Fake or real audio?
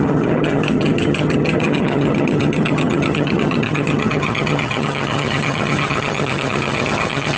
fake